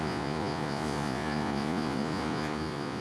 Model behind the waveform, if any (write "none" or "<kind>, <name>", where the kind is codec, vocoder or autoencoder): vocoder, Vocos